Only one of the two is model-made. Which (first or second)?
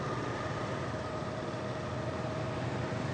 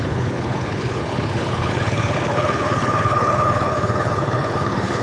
second